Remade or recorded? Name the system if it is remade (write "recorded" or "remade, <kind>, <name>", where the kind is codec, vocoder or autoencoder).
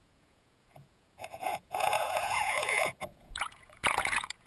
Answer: remade, vocoder, Vocos